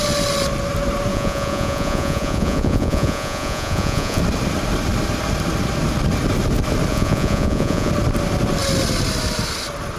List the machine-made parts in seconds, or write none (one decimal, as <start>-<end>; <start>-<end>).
1.1-4.2; 6.9-7.9